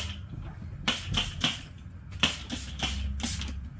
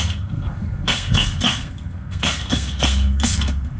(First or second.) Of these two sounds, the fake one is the second